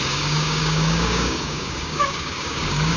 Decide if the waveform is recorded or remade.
remade